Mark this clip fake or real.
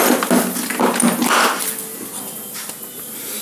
real